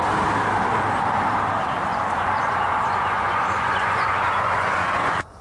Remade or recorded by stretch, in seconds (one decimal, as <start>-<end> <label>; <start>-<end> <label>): 0.0-1.9 recorded; 1.9-5.4 remade